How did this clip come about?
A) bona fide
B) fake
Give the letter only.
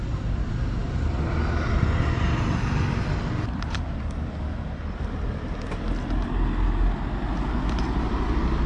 A